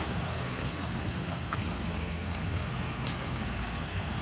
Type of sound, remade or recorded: remade